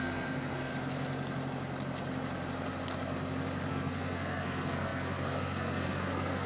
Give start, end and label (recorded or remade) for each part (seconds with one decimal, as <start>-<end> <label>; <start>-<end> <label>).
0.0-0.7 remade; 0.7-3.7 recorded; 3.7-6.5 remade